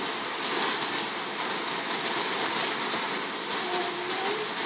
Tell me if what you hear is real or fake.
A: real